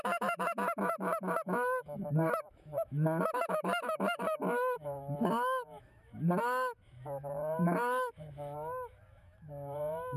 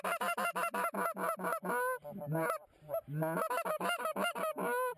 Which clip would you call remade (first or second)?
first